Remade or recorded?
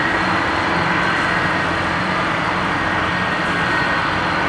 remade